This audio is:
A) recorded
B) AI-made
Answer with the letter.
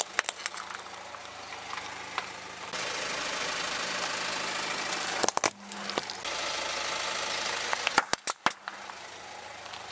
A